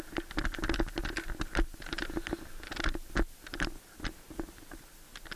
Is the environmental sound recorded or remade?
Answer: recorded